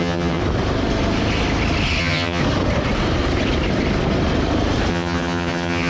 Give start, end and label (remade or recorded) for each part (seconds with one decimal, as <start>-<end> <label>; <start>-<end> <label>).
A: 0.0-0.4 remade; 0.4-2.0 recorded; 2.0-2.4 remade; 2.4-4.9 recorded; 4.9-5.9 remade